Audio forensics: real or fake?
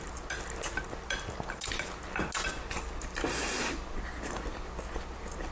real